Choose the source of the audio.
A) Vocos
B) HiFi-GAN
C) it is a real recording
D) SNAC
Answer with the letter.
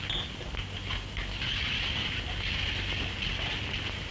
C